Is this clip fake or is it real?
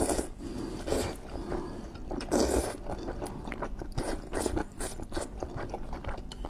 real